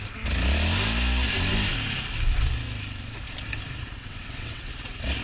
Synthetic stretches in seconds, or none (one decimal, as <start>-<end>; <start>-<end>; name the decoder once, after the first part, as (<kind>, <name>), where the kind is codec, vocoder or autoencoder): 4.0-4.7 (vocoder, WaveNeXt)